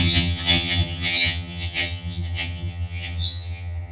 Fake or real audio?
fake